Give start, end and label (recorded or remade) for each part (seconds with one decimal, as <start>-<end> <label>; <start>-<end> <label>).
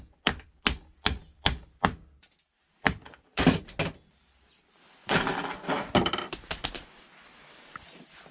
0.0-8.3 recorded